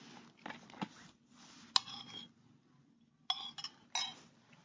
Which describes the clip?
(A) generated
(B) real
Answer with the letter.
B